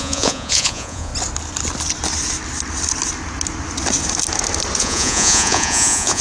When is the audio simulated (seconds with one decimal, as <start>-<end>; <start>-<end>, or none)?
0.0-1.1; 4.8-6.2